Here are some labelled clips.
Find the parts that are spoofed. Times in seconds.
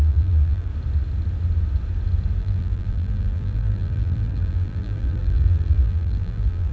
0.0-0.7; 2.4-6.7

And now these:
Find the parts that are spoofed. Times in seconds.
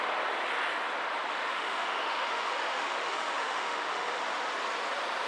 1.3-4.5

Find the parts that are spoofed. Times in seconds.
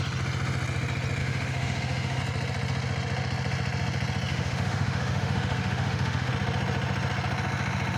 1.2-2.2; 4.3-6.3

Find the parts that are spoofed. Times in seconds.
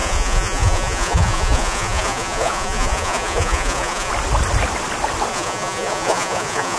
0.0-4.1; 5.3-6.8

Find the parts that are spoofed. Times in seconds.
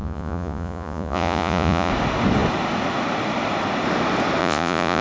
0.0-1.9; 4.4-5.0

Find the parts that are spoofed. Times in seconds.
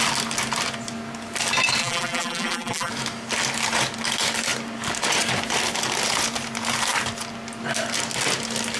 1.8-2.9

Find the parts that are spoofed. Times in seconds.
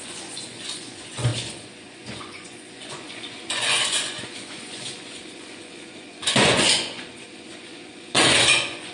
0.0-8.9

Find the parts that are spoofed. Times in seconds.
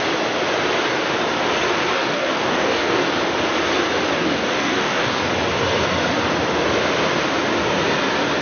1.9-3.0; 4.2-5.2